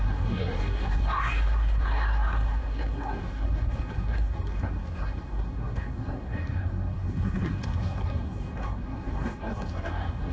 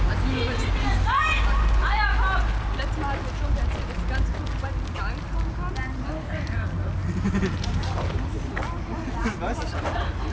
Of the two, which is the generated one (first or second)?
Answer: first